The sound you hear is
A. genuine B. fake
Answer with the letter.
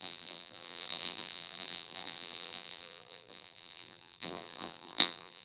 B